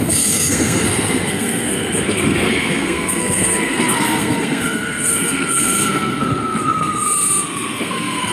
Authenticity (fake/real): fake